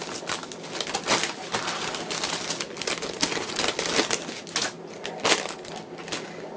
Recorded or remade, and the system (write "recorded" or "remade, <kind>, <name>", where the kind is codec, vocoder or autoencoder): recorded